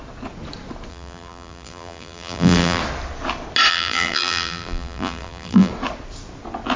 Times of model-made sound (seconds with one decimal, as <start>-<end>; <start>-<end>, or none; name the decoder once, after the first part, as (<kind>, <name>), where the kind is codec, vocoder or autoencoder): 0.9-2.8 (vocoder, BigVGAN v2); 3.7-5.7